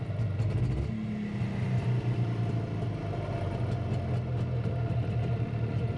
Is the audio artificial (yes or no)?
no